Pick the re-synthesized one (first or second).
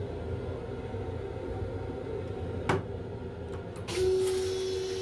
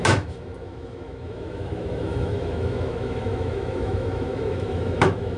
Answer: second